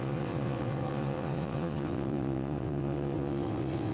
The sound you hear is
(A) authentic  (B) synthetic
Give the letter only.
B